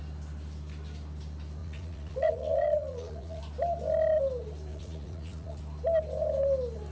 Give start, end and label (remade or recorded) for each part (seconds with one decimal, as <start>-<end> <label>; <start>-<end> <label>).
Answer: 0.0-1.6 recorded; 1.6-3.4 remade; 3.4-4.7 recorded; 4.7-5.6 remade; 5.6-6.9 recorded